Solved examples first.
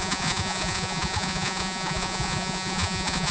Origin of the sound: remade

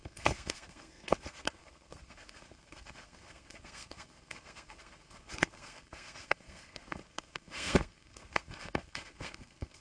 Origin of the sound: remade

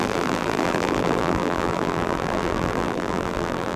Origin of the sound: remade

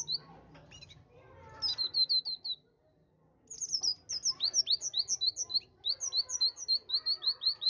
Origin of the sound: recorded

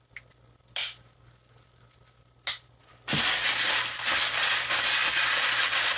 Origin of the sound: recorded